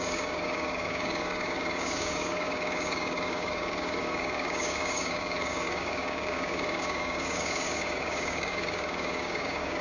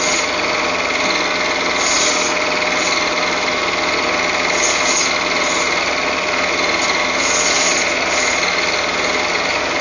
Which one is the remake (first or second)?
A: first